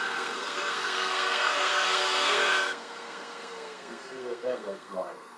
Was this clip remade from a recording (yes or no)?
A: yes